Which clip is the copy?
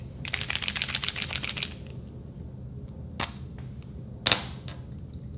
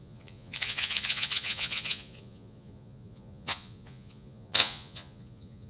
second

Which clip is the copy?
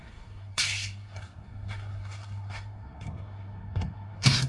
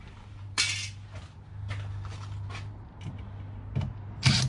first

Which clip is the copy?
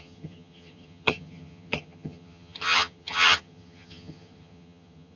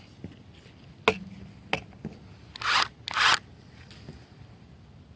first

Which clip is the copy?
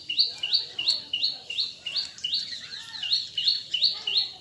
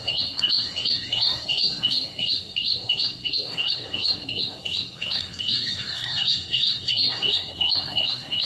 second